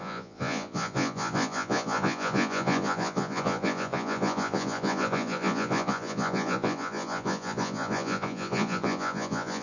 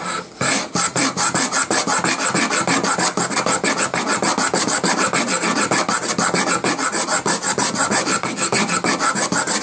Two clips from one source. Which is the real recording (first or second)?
second